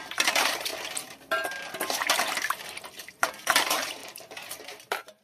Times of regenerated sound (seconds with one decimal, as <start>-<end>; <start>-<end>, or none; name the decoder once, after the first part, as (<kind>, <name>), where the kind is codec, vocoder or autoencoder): 0.0-0.7 (vocoder, BigVGAN v2); 3.1-5.2